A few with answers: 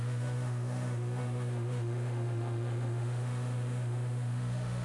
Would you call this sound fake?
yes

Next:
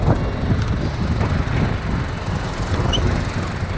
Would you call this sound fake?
no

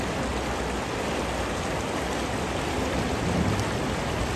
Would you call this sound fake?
no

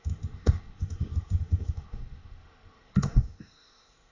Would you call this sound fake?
yes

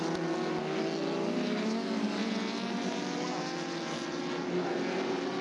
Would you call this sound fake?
no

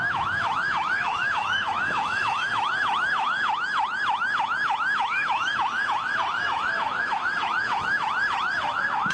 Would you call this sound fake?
yes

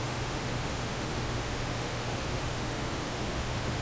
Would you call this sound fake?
yes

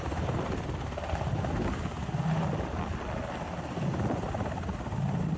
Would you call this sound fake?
no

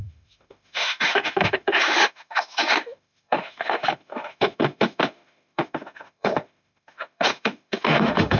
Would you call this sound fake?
yes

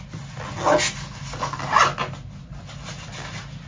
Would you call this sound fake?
no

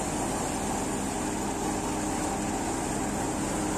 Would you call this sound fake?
no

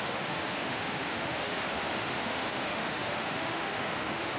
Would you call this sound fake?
yes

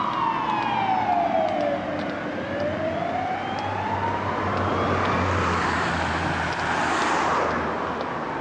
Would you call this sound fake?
no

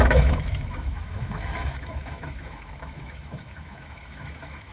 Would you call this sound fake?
yes